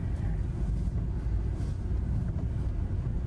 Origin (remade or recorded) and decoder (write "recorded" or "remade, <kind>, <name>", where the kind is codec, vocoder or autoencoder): recorded